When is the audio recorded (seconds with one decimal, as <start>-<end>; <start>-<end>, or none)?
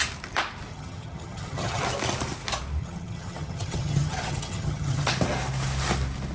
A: 0.0-0.7; 1.8-2.8; 5.1-6.3